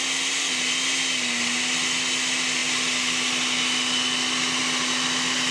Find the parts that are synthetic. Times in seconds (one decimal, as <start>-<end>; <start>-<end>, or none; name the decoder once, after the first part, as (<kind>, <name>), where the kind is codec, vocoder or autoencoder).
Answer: none